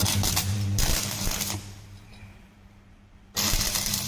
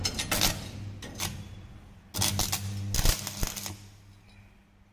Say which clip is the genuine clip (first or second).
second